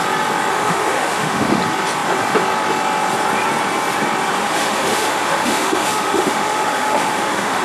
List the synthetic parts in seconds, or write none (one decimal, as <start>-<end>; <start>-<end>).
0.5-1.6; 4.4-7.6